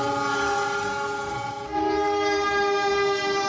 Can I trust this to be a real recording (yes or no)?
yes